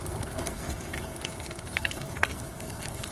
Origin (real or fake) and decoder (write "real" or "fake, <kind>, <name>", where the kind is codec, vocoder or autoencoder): fake, codec, SNAC